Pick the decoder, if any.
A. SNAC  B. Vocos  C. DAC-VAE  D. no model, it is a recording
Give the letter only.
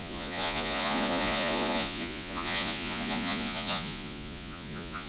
B